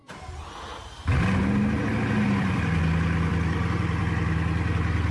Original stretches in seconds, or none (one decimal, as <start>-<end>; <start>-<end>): 0.9-1.9; 2.8-3.3; 4.0-5.1